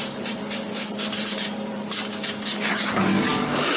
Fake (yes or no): yes